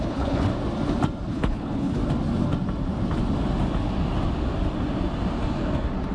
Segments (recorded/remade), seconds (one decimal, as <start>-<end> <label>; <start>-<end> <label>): 0.0-0.5 remade; 0.5-1.3 recorded; 1.3-2.0 remade; 2.0-6.1 recorded